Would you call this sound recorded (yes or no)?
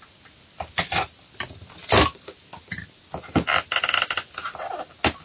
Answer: yes